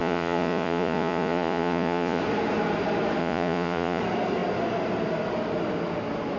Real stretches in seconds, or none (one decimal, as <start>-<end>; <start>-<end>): 2.2-3.2; 4.0-6.4